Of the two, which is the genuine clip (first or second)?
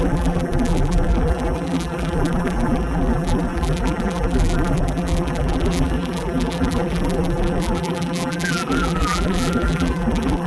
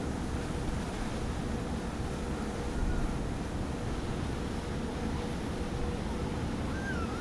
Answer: second